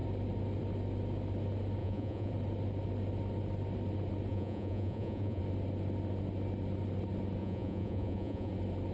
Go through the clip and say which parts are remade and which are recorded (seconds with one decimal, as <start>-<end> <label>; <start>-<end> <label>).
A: 0.0-1.8 recorded; 1.8-2.3 remade; 2.3-4.3 recorded; 4.3-5.4 remade; 5.4-7.4 recorded; 7.4-8.5 remade; 8.5-8.9 recorded